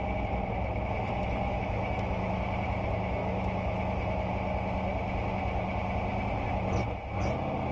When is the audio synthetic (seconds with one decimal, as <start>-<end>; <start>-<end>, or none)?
1.5-2.4; 3.2-4.3

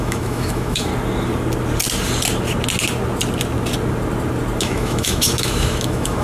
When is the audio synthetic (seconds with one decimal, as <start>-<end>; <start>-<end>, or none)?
0.0-0.9; 4.6-6.2

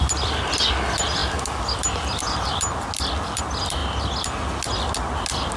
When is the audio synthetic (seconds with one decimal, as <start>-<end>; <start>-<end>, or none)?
none